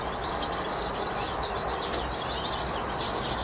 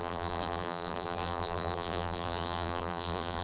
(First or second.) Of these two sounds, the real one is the first